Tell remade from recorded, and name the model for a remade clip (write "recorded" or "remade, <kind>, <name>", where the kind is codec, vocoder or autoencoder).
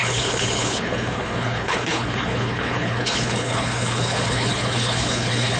remade, codec, HILCodec